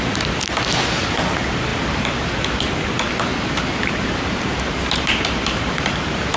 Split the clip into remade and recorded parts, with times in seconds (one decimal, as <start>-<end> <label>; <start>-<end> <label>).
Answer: 0.0-1.7 recorded; 1.7-2.4 remade; 2.4-3.3 recorded; 3.3-6.4 remade